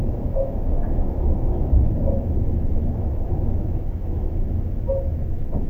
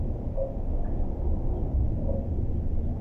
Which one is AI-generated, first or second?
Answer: first